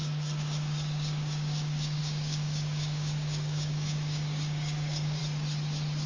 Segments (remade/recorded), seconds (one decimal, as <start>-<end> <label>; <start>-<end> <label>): 0.0-5.2 remade; 5.2-6.1 recorded